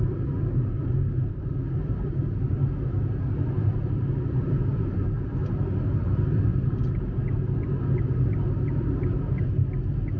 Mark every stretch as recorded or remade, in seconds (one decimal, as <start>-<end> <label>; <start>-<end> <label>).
0.0-10.2 recorded